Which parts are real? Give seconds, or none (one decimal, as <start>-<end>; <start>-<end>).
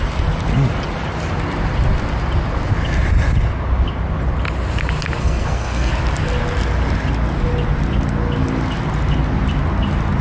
0.0-5.2; 5.9-10.2